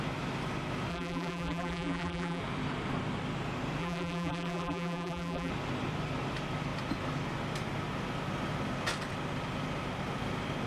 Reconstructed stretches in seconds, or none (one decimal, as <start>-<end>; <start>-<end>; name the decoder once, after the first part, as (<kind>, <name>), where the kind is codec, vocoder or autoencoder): 0.9-2.4 (vocoder, BigVGAN v2); 3.8-5.5